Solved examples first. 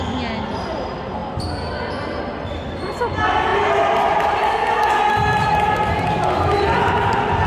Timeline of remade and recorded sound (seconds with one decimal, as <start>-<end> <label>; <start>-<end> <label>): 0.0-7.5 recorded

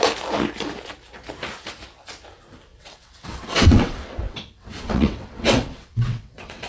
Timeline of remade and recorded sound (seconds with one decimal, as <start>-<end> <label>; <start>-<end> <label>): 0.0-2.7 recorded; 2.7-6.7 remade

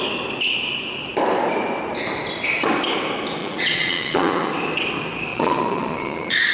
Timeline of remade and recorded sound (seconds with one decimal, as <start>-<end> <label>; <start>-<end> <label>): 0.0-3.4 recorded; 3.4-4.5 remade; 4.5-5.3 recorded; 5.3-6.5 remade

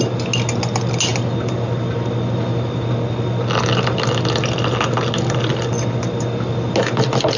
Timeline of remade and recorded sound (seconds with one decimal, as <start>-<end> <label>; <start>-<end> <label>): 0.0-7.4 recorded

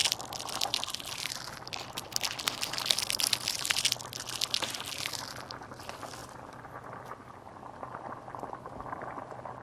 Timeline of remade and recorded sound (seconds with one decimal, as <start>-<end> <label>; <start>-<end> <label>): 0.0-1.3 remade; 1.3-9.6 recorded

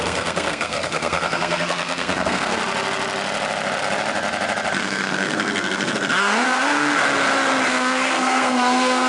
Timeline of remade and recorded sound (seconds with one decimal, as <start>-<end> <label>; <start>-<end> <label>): 0.0-2.6 remade; 2.6-4.8 recorded; 4.8-7.0 remade; 7.0-7.7 recorded; 7.7-9.1 remade